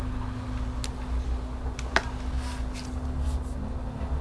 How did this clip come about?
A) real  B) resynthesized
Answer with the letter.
A